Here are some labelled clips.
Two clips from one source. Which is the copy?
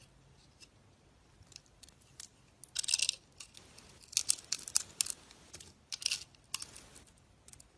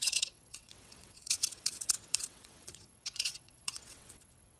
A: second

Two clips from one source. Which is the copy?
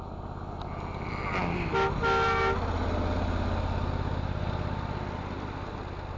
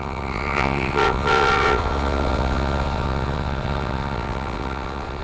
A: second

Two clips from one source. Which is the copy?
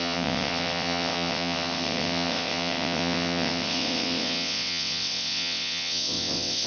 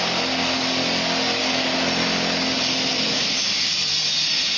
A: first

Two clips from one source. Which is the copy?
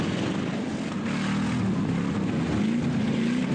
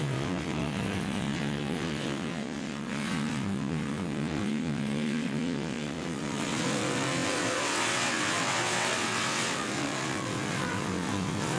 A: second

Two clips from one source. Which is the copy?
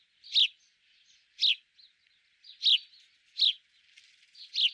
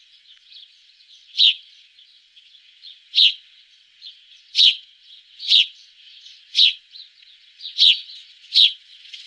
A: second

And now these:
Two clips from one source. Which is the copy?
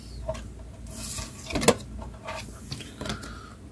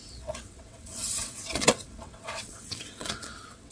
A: second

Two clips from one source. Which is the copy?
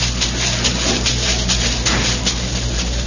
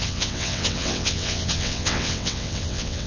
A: second